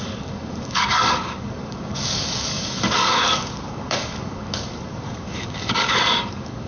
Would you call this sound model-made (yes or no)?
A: yes